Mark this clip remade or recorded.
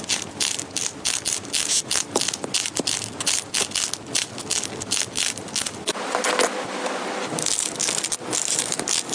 recorded